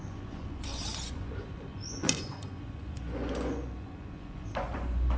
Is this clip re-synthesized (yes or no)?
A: yes